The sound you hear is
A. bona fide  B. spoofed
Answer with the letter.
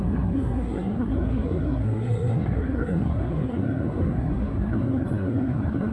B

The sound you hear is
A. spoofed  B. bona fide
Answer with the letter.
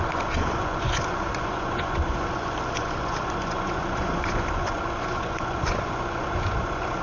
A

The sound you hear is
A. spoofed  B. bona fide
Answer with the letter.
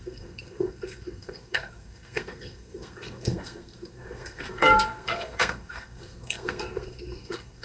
A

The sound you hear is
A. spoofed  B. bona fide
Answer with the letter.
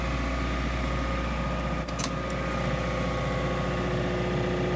B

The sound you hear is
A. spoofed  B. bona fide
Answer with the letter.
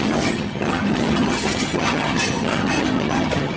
A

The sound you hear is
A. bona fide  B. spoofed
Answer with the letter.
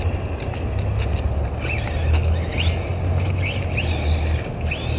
A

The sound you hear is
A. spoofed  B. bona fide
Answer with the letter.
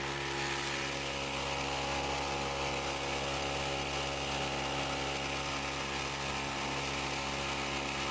B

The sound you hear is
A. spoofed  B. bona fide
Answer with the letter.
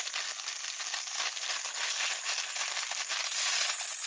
B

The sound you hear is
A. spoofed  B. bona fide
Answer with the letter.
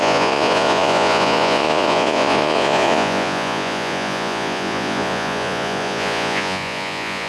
A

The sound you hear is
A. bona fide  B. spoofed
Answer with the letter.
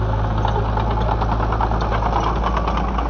A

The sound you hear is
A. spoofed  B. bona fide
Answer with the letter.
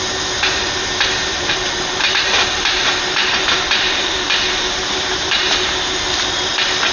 A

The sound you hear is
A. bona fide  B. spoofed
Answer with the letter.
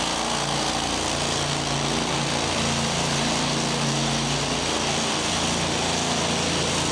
A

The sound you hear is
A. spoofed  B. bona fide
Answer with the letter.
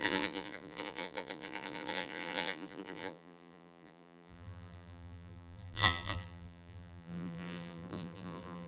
A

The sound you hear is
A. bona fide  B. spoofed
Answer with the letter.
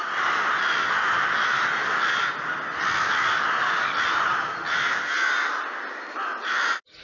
A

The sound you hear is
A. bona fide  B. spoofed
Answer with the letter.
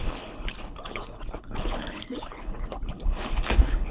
B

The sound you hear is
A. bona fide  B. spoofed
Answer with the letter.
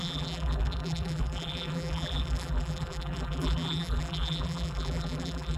B